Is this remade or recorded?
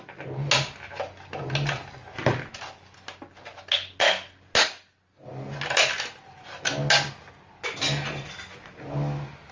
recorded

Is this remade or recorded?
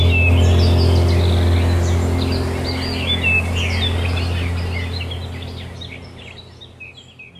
recorded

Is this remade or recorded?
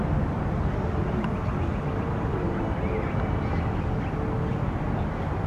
recorded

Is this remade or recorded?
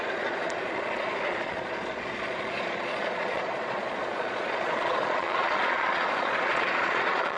remade